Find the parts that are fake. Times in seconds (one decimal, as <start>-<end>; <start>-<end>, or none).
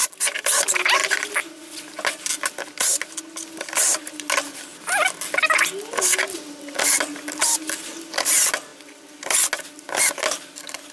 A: none